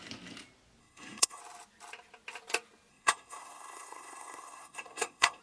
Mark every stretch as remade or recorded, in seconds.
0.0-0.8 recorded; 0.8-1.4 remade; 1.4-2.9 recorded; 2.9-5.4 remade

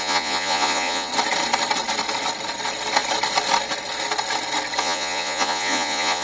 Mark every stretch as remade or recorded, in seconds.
0.0-1.1 remade; 1.1-4.8 recorded; 4.8-6.2 remade

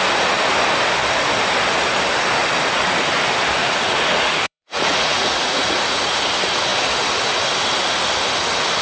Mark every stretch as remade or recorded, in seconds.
0.0-3.6 recorded; 3.6-6.2 remade; 6.2-8.8 recorded

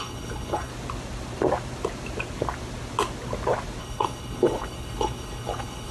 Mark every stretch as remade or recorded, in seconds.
0.0-0.7 remade; 0.7-3.8 recorded; 3.8-5.9 remade

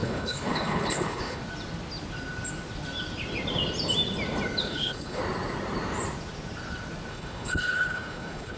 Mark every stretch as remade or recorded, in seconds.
0.0-1.4 remade; 1.4-4.6 recorded; 4.6-5.2 remade; 5.2-7.1 recorded; 7.1-8.6 remade

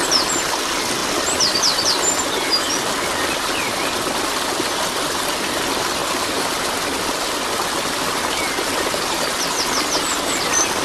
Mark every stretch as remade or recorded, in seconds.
0.0-10.8 recorded

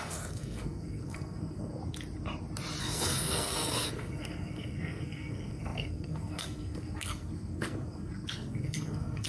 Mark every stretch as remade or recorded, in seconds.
0.0-1.8 remade; 1.8-2.8 recorded; 2.8-9.3 remade

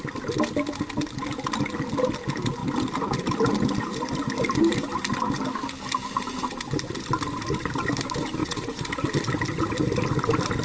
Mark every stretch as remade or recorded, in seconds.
0.0-8.4 recorded; 8.4-8.9 remade; 8.9-10.6 recorded